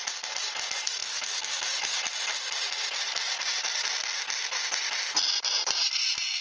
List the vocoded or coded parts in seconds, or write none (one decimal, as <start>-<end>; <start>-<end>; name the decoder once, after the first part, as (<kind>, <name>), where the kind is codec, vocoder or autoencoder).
1.0-2.0 (codec, DAC)